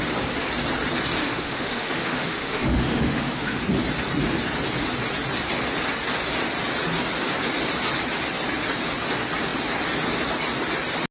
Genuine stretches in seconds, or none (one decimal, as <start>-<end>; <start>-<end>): 0.0-1.2; 3.6-11.1